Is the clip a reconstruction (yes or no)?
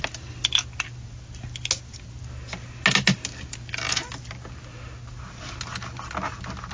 no